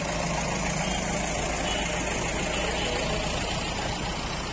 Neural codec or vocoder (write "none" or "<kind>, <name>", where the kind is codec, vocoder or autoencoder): none